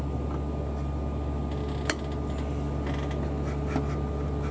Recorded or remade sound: recorded